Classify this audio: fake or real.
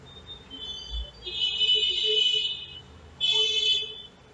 real